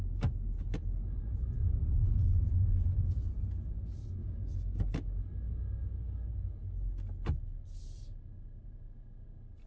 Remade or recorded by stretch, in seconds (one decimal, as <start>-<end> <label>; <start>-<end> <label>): 0.0-4.2 recorded; 4.2-4.8 remade; 4.8-9.7 recorded